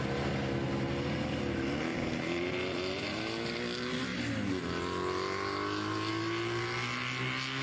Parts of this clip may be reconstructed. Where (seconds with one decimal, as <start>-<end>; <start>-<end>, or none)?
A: 1.9-3.1